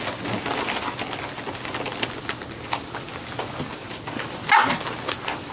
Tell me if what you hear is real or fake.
real